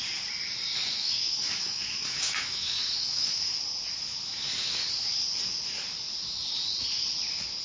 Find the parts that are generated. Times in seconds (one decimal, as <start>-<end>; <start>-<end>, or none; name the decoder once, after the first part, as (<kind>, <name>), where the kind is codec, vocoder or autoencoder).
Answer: 0.8-3.6 (autoencoder, DAC-VAE)